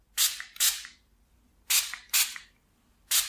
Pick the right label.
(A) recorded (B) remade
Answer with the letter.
A